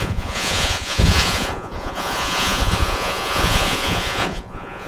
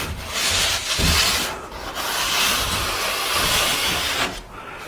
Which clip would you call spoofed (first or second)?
first